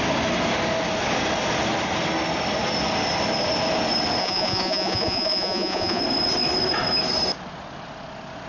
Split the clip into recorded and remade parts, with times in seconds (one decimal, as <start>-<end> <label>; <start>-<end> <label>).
0.0-4.2 recorded; 4.2-6.0 remade; 6.0-8.5 recorded